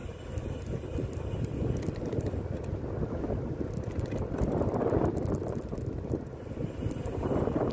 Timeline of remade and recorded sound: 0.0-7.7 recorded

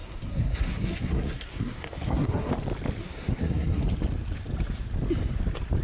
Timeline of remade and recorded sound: 0.0-2.5 remade; 2.5-3.0 recorded; 3.0-3.8 remade; 3.8-5.8 recorded

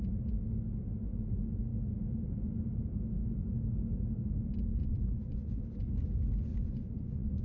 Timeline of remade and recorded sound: 0.0-4.8 recorded; 4.8-5.6 remade; 5.6-6.5 recorded; 6.5-7.4 remade

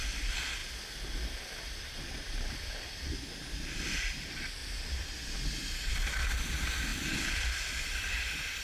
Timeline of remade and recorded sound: 0.0-0.6 remade; 0.6-1.8 recorded; 1.8-4.6 remade; 4.6-5.9 recorded; 5.9-8.6 remade